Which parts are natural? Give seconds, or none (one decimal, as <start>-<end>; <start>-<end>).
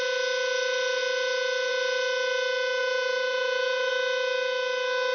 0.0-2.8; 3.9-5.1